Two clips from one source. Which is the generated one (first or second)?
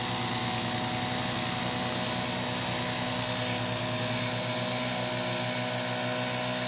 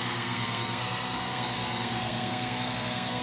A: second